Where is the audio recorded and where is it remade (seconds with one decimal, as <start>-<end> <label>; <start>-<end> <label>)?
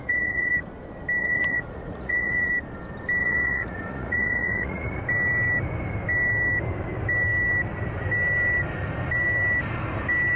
0.0-0.7 remade; 0.7-1.2 recorded; 1.2-2.5 remade; 2.5-3.2 recorded; 3.2-5.0 remade; 5.0-10.4 recorded